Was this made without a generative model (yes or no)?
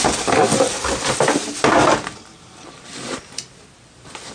yes